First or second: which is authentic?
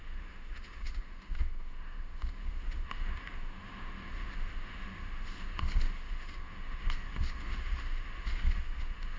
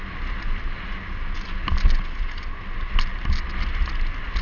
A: second